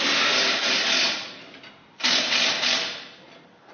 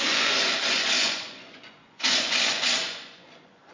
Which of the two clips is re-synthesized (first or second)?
second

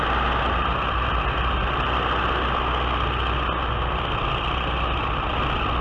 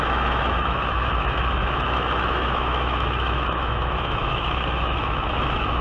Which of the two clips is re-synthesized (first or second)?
second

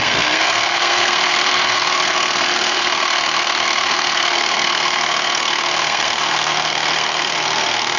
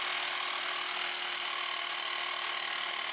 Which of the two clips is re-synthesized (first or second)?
first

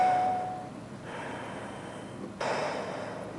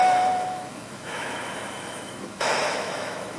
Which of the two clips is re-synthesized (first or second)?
second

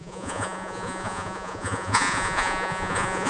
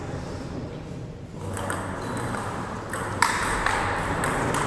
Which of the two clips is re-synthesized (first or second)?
first